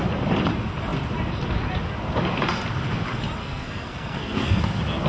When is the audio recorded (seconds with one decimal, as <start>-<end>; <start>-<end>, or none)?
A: 0.0-3.4; 4.6-5.1